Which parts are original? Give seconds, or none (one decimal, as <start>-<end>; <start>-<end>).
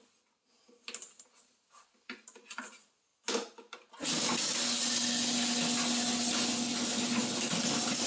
0.0-8.1